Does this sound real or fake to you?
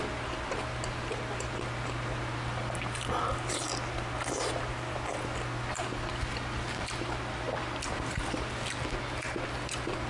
real